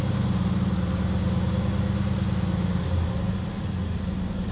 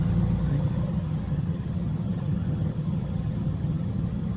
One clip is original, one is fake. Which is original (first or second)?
first